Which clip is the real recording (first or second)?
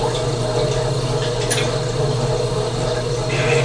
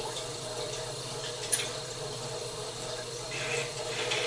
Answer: first